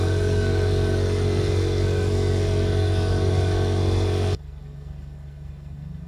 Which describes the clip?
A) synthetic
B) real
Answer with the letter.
A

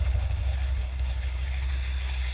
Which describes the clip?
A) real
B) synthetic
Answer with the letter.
B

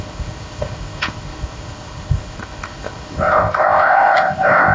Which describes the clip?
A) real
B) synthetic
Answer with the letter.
B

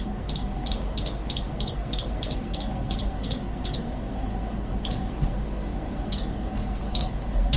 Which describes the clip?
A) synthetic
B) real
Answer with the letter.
A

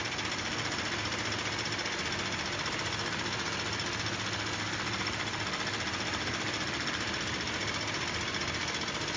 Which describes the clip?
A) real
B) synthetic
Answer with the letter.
A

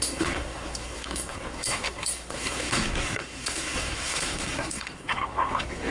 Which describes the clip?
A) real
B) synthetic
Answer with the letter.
B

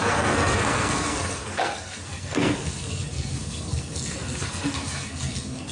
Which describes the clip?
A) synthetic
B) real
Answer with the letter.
A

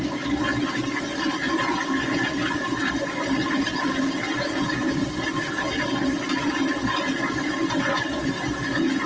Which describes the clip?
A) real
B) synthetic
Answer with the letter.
A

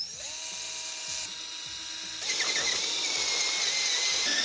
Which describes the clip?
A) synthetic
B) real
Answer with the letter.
B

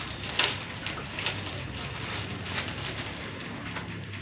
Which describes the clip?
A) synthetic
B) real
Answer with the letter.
B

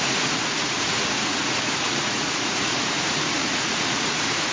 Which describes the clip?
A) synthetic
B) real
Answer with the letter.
A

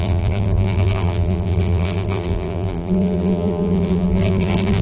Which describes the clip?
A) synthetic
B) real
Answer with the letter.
A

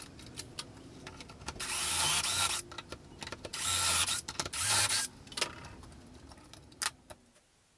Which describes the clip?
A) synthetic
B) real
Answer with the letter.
B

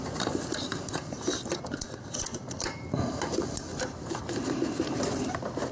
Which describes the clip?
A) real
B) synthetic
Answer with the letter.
B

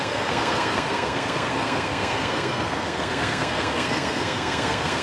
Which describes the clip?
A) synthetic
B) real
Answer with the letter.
A